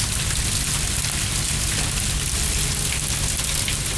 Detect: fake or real real